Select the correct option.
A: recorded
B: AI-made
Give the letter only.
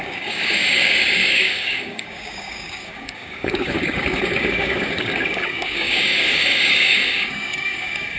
B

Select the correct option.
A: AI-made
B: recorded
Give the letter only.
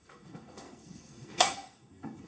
A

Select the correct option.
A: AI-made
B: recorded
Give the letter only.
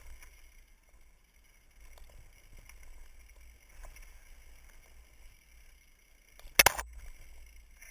B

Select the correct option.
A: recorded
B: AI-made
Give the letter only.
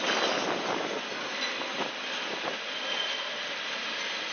A